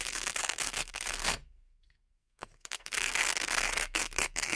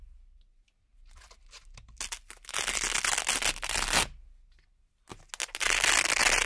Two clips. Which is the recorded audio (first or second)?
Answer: second